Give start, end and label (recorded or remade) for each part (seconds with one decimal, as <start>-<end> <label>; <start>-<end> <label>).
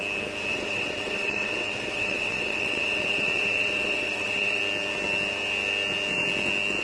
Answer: 0.0-0.5 recorded; 0.5-4.6 remade; 4.6-6.8 recorded